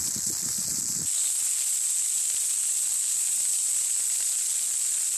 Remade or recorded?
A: recorded